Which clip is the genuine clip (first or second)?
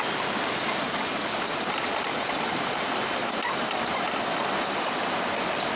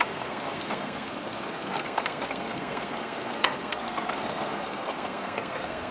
first